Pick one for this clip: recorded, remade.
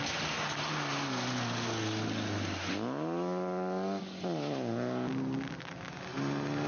recorded